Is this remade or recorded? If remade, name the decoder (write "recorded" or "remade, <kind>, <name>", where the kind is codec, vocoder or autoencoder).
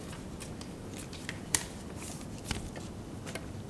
recorded